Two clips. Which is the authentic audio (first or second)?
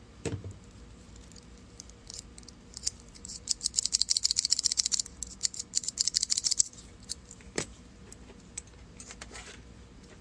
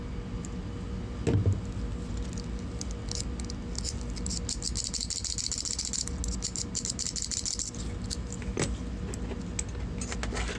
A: second